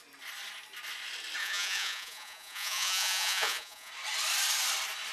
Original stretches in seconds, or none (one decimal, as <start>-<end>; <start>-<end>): 0.0-1.4; 3.9-5.1